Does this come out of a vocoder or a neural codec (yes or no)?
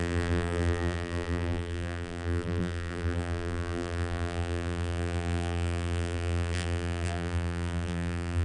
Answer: yes